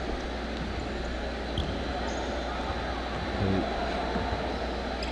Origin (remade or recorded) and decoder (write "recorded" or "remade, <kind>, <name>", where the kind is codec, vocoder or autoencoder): recorded